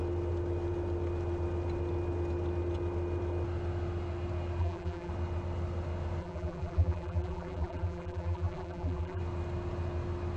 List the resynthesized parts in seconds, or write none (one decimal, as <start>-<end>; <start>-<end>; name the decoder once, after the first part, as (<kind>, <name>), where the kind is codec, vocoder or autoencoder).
4.6-5.1 (vocoder, BigVGAN v2); 6.2-9.2